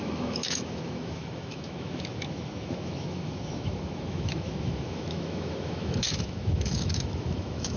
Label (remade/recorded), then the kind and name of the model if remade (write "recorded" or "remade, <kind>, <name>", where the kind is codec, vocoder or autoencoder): remade, autoencoder, DAC-VAE